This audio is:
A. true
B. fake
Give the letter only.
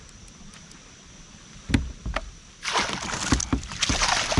A